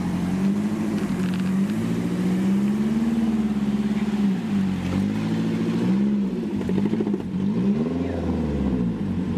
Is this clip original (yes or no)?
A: yes